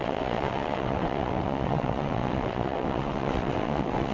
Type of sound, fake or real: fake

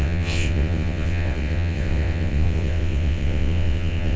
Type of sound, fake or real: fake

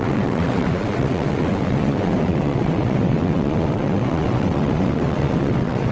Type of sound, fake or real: fake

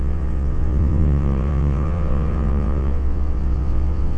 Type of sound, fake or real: fake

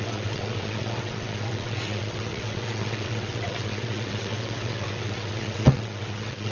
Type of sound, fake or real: fake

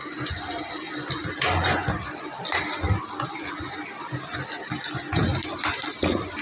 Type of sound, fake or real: real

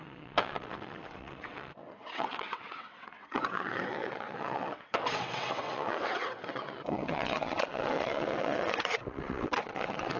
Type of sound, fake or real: fake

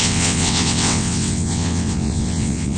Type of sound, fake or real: fake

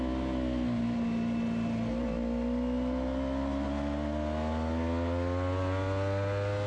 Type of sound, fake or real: real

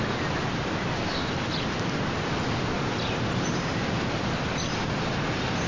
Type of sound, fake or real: real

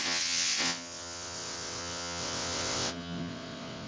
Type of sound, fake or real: fake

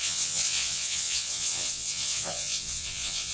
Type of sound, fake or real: fake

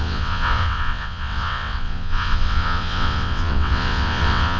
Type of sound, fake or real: fake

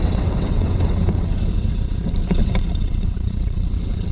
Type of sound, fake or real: fake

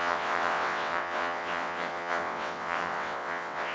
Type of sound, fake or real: fake